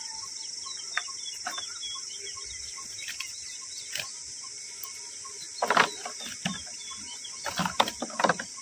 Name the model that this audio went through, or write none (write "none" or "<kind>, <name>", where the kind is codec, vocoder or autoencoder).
none